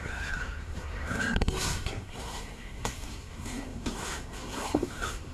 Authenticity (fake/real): fake